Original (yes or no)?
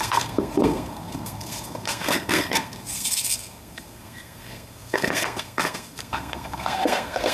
no